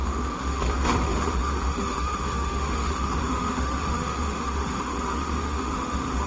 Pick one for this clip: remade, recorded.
remade